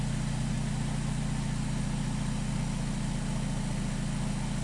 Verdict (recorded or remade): recorded